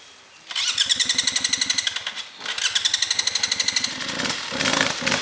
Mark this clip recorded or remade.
recorded